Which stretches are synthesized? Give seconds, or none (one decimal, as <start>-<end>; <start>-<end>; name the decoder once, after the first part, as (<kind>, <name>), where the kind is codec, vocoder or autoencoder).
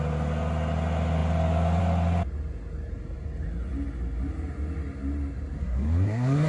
5.6-6.5 (codec, SNAC)